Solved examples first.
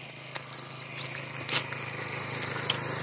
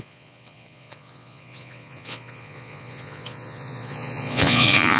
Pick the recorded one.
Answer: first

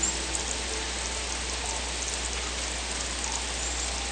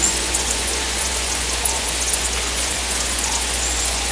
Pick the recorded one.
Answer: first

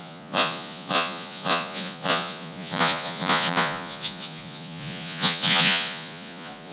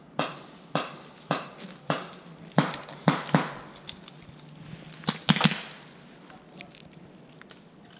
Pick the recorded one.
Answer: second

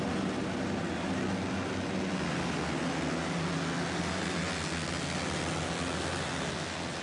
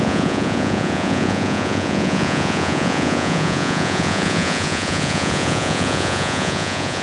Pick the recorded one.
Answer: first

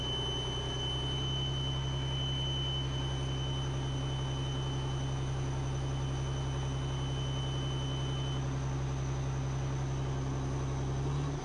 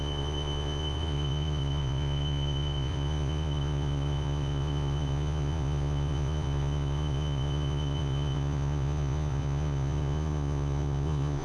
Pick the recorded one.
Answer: first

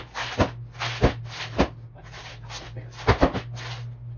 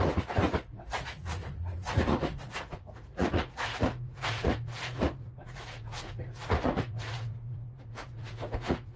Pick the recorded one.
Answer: first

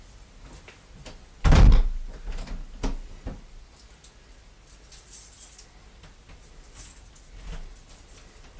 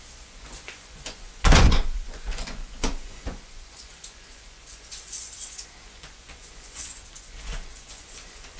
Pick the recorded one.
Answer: first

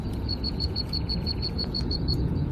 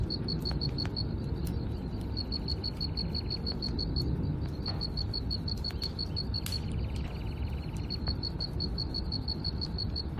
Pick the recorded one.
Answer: second